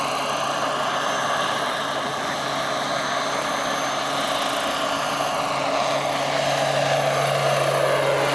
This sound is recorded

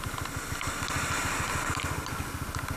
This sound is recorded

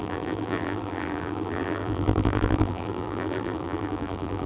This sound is remade